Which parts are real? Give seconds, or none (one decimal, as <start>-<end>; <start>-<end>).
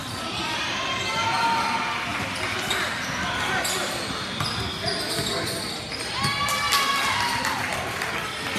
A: 0.0-7.7